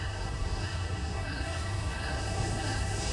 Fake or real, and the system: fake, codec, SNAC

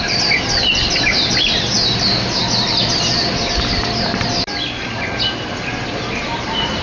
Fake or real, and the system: real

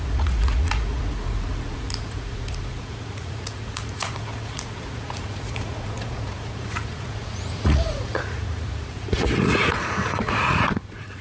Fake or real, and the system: fake, vocoder, Vocos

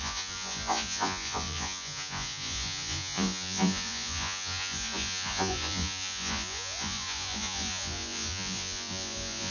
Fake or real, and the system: fake, vocoder, Vocos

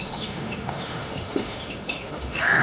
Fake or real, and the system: fake, autoencoder, DAC-VAE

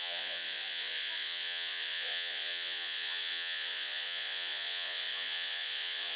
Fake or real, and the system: fake, vocoder, Vocos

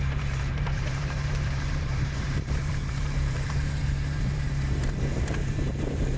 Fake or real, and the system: fake, vocoder, BigVGAN v2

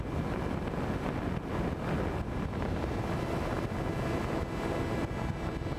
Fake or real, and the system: real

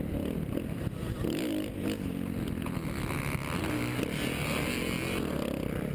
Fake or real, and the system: real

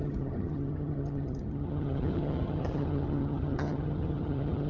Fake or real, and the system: fake, vocoder, HiFi-GAN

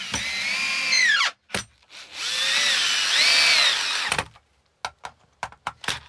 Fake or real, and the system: real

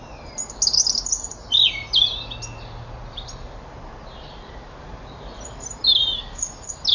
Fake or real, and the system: real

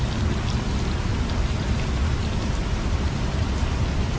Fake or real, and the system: real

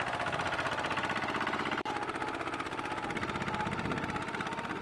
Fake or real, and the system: real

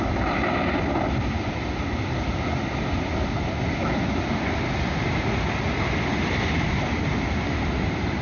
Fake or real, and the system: real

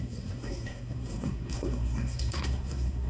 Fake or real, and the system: fake, codec, SNAC